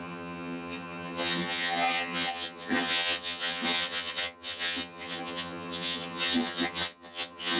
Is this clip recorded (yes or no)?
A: no